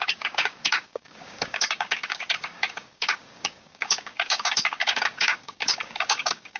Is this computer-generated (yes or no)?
yes